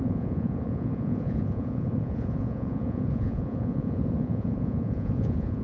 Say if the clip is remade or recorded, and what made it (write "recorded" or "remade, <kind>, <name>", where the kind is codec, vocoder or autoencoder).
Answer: remade, vocoder, Vocos